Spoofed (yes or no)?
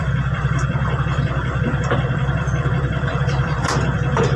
yes